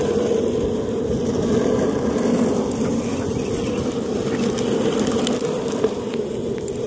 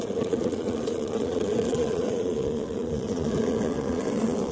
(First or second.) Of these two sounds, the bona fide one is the first